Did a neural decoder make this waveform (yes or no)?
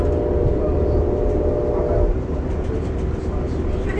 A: no